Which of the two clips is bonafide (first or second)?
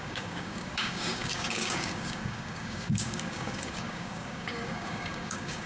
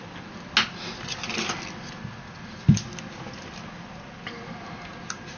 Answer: second